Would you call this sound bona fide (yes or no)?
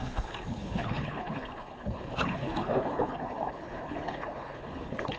no